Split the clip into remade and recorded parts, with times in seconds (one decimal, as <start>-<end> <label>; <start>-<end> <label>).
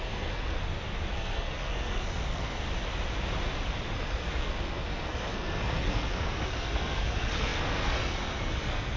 0.0-0.6 remade; 0.6-1.1 recorded; 1.1-2.6 remade; 2.6-3.9 recorded; 3.9-9.0 remade